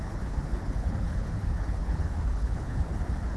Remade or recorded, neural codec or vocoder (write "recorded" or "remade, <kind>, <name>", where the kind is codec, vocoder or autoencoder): remade, codec, HILCodec